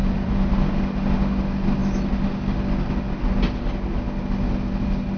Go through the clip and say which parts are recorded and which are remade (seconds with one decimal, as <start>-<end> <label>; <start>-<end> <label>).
0.0-0.5 remade; 0.5-5.2 recorded